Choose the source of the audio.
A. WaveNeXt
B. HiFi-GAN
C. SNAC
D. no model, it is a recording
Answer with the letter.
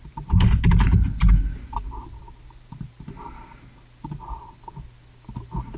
D